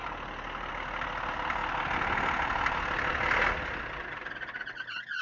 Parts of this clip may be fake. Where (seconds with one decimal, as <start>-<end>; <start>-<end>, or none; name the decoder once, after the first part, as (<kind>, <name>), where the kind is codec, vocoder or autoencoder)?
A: none